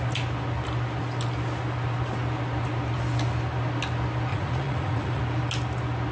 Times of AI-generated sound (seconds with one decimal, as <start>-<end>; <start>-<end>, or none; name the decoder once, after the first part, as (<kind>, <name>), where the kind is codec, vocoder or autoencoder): 4.3-5.2 (vocoder, Vocos)